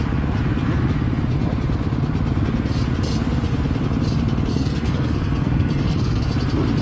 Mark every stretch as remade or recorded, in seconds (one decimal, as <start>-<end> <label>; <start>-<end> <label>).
0.0-4.5 recorded; 4.5-6.2 remade; 6.2-6.8 recorded